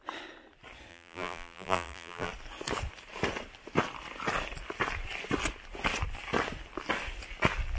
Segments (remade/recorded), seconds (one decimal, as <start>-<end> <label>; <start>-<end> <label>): 0.0-0.9 recorded; 0.9-2.3 remade; 2.3-7.8 recorded